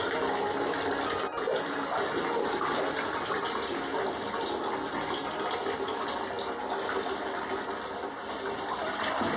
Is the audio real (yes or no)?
yes